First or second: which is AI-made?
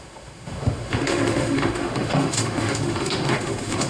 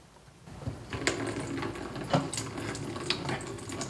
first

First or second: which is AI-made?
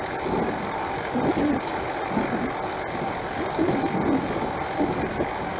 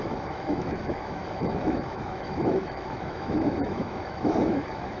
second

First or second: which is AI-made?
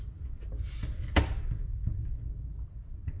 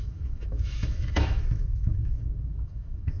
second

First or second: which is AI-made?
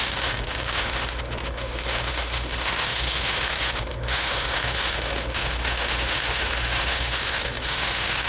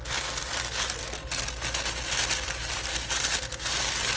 first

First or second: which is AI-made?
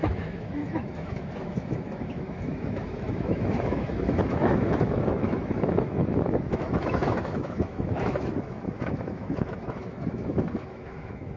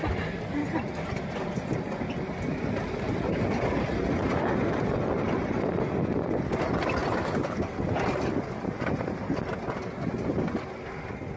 first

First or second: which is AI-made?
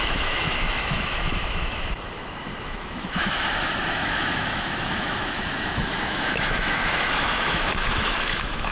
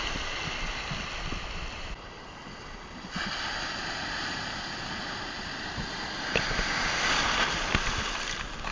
first